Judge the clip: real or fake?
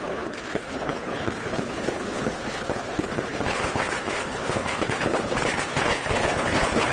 fake